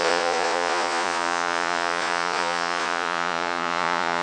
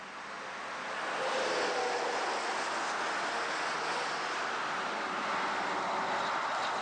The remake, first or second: first